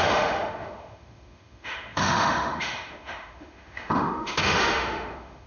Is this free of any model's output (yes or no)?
no